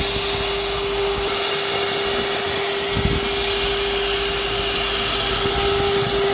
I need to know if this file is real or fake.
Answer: real